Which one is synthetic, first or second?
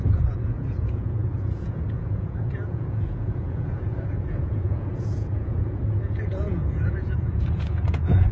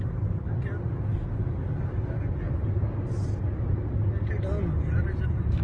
first